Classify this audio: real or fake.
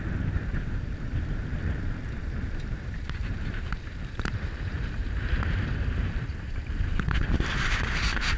fake